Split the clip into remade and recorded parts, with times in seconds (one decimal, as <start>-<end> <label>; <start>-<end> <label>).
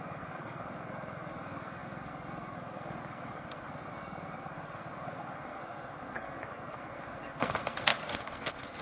0.0-8.8 remade